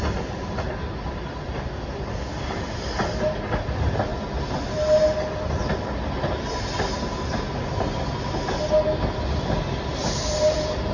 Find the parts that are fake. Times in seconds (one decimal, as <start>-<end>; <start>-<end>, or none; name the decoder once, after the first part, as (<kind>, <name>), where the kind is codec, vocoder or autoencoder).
none